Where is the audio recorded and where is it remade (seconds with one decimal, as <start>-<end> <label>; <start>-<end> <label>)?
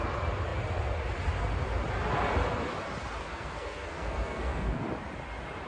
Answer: 0.0-3.2 recorded; 3.2-4.8 remade; 4.8-5.7 recorded